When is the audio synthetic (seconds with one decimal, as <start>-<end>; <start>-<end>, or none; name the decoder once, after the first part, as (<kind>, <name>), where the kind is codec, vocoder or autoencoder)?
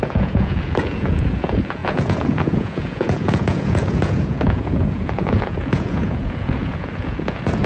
0.0-7.7 (vocoder, Vocos)